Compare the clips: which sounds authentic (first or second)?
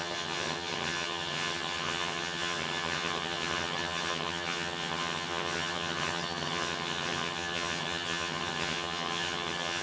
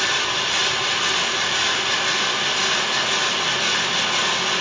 second